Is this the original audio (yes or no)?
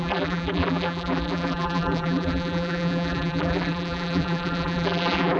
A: no